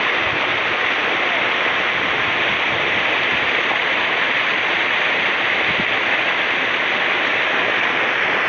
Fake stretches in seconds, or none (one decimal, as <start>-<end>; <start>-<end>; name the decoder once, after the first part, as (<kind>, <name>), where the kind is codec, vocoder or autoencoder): none